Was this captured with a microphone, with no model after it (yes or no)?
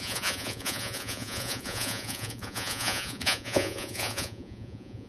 no